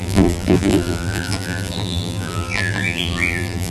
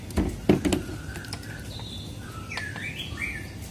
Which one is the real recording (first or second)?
second